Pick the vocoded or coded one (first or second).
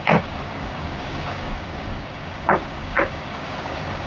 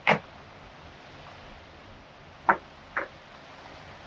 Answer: first